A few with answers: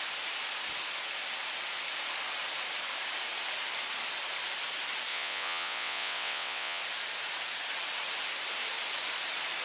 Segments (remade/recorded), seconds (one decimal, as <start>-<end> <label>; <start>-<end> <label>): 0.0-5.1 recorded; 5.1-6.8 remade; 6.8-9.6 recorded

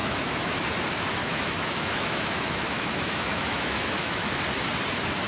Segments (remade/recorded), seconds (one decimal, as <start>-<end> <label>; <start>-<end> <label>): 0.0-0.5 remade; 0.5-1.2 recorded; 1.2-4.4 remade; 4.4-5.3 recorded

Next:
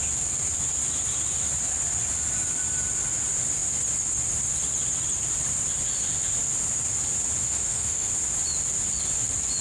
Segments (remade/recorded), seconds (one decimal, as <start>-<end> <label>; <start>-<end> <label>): 0.0-7.4 recorded; 7.4-8.1 remade; 8.1-9.6 recorded

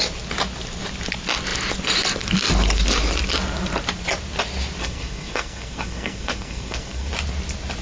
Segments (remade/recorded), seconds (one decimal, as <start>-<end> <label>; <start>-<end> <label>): 0.0-4.8 recorded; 4.8-7.1 remade; 7.1-7.8 recorded